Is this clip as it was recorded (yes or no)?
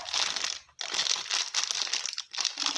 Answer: yes